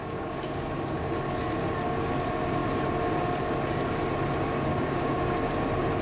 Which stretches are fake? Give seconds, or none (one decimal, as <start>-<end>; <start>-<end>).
0.0-1.0; 4.7-5.3